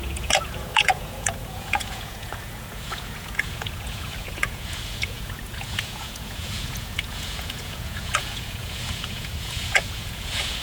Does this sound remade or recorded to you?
remade